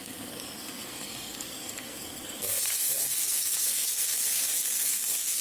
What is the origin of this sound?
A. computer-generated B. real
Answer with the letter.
A